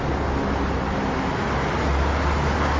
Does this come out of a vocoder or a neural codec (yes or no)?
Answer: no